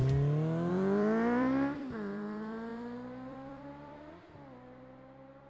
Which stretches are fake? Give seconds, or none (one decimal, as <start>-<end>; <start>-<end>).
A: 0.7-5.5